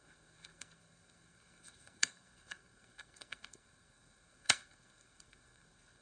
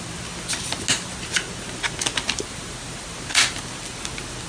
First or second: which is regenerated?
first